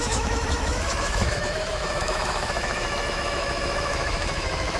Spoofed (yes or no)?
yes